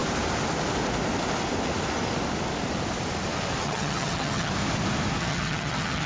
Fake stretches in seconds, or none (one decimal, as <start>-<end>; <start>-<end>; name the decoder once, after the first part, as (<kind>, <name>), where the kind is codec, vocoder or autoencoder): 3.6-4.5 (vocoder, HiFi-GAN); 5.2-6.1